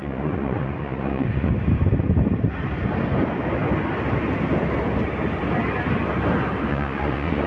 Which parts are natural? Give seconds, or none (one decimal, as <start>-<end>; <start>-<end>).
1.5-6.7